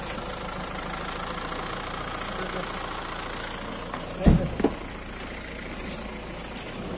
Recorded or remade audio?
recorded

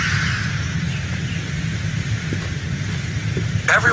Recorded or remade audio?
recorded